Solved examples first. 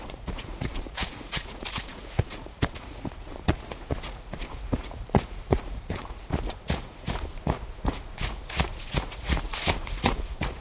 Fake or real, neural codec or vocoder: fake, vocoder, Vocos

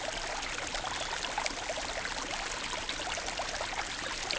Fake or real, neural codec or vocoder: real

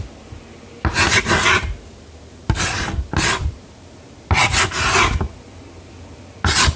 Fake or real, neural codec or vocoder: real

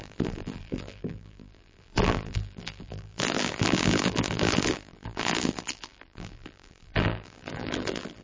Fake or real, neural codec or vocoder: fake, vocoder, BigVGAN v2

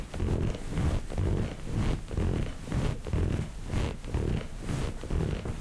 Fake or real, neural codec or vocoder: real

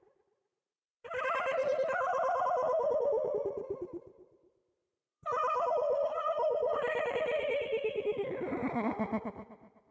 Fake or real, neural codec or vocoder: fake, vocoder, Vocos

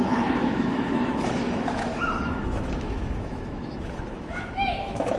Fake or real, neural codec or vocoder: fake, autoencoder, DAC-VAE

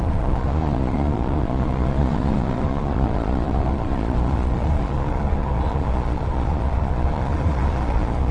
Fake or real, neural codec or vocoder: fake, vocoder, Vocos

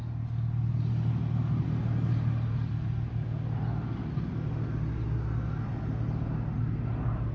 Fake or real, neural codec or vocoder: real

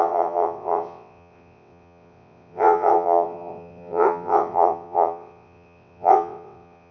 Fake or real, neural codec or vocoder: fake, vocoder, WaveNeXt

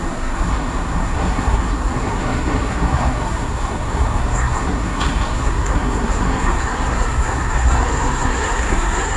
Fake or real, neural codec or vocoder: fake, codec, SNAC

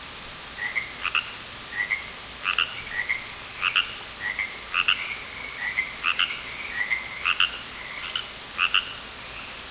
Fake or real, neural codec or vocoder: real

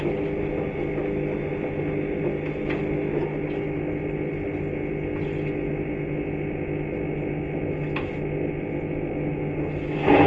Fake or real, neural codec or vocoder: real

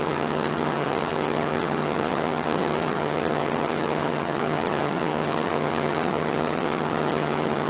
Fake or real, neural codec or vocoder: fake, vocoder, HiFi-GAN